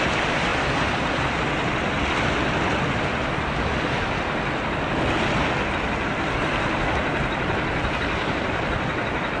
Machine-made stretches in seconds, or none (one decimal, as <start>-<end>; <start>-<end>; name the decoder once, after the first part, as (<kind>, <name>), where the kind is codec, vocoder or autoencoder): none